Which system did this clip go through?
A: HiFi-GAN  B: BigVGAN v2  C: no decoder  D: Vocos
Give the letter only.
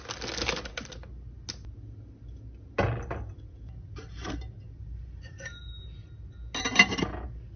C